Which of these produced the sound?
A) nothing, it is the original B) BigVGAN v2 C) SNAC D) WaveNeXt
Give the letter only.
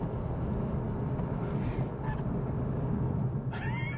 A